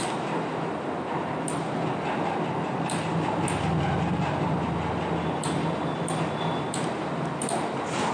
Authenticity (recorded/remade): recorded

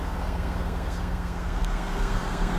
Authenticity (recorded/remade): remade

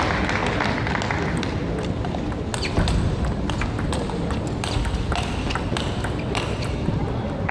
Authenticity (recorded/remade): recorded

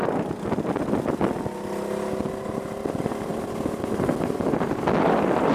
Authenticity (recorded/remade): recorded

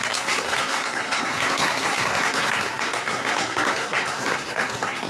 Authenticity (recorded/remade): remade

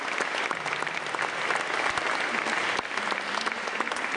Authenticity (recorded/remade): recorded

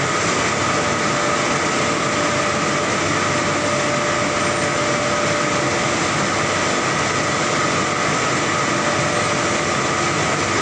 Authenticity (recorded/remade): recorded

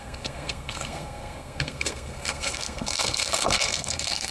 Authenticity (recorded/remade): remade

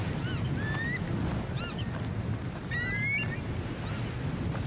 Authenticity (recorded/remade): recorded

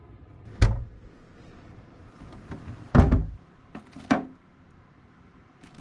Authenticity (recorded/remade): recorded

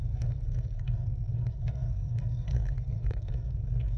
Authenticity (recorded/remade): remade